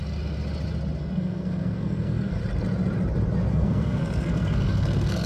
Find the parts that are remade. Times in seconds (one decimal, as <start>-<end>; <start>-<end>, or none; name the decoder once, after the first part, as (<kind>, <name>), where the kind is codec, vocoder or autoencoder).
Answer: 1.0-2.4 (codec, SNAC); 3.5-5.3

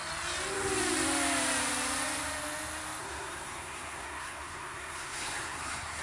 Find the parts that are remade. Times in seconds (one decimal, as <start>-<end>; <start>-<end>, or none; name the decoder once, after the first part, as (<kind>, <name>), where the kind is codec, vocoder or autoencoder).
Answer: 3.0-6.0 (codec, SNAC)

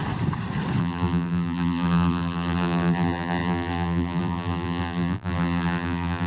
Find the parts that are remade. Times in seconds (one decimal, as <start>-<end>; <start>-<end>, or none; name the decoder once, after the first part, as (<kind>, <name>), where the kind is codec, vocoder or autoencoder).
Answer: 0.8-6.3 (vocoder, BigVGAN v2)

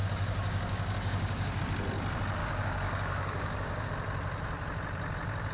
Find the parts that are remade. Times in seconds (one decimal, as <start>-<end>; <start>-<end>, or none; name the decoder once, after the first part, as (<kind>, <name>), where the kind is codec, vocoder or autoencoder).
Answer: 0.0-1.6 (codec, DAC); 2.4-3.9

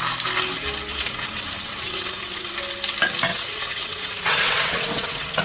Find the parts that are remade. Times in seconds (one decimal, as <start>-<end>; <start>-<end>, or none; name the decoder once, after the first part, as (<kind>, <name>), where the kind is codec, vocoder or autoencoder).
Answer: 0.9-2.5 (vocoder, WaveNeXt); 3.3-5.4

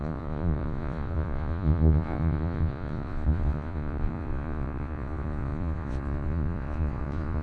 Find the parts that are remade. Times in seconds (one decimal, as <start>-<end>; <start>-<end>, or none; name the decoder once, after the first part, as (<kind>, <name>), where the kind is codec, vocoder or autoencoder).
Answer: 0.0-7.4 (vocoder, Vocos)

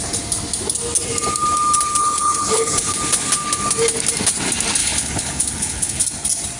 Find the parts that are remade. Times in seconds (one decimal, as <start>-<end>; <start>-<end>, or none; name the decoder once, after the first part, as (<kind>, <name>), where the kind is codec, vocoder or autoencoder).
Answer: 2.0-3.0 (codec, HILCodec); 4.8-6.0